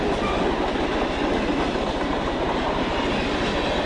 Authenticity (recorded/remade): recorded